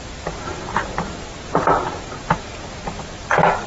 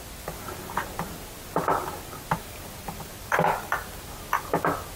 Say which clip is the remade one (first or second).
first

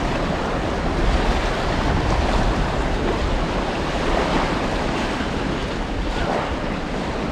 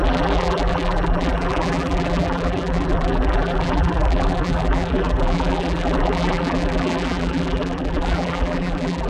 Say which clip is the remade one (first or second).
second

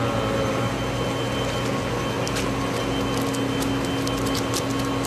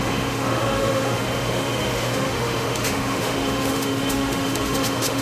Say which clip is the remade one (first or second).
second